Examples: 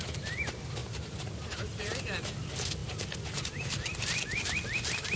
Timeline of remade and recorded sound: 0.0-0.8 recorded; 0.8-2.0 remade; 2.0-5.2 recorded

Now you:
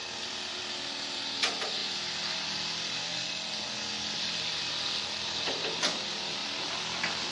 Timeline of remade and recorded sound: 0.0-0.6 remade; 0.6-6.4 recorded; 6.4-7.3 remade